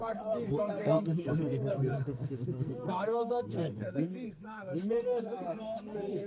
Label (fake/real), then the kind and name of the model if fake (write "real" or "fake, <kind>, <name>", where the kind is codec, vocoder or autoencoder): fake, codec, SNAC